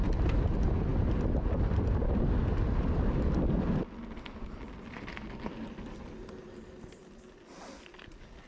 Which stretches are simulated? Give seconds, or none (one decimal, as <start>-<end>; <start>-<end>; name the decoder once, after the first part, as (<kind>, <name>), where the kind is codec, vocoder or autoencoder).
none